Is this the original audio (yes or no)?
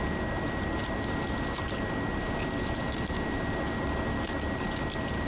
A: yes